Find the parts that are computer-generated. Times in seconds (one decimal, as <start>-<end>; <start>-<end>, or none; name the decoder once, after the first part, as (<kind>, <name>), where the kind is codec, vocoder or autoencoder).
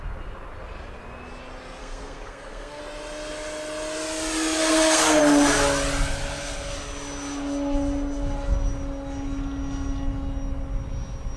1.8-2.8 (codec, SNAC); 4.6-5.2